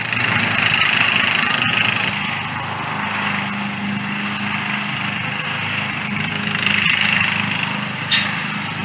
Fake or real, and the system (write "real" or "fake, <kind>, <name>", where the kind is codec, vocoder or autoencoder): real